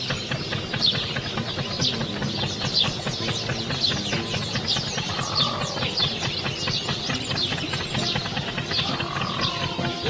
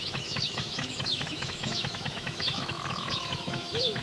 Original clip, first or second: first